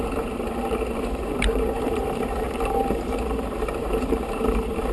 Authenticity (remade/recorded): remade